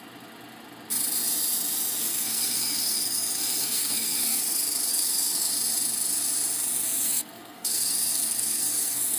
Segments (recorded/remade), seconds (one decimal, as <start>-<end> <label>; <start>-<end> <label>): 0.0-2.0 recorded; 2.0-4.4 remade; 4.4-4.9 recorded; 4.9-5.5 remade; 5.5-6.8 recorded; 6.8-9.2 remade